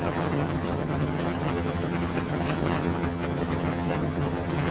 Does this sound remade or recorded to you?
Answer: remade